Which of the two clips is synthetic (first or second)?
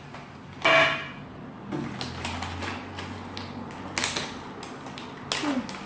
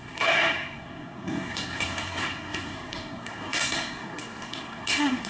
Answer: second